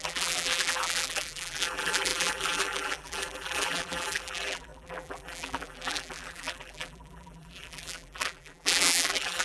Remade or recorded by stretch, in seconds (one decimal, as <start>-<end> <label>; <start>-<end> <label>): 0.0-9.4 remade

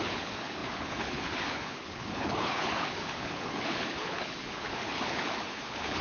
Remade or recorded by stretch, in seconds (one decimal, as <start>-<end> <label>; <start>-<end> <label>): 0.0-6.0 remade

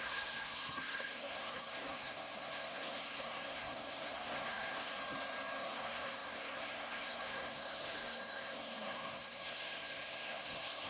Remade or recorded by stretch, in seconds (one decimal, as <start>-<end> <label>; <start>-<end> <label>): 0.0-4.9 remade; 4.9-5.6 recorded; 5.6-10.9 remade

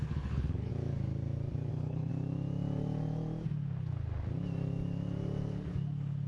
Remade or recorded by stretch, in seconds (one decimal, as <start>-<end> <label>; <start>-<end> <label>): 0.0-0.7 remade; 0.7-1.7 recorded; 1.7-2.1 remade; 2.1-6.3 recorded

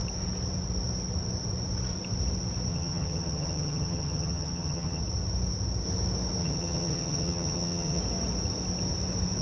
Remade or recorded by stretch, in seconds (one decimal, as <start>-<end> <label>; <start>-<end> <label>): 0.0-2.7 recorded; 2.7-5.0 remade; 5.0-6.4 recorded; 6.4-8.0 remade; 8.0-9.4 recorded